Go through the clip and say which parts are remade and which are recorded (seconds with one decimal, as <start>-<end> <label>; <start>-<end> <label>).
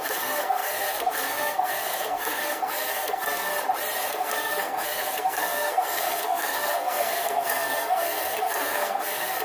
0.0-3.5 remade; 3.5-4.1 recorded; 4.1-9.4 remade